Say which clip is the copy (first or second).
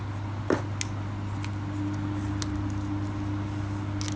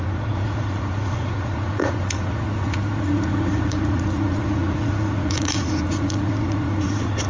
second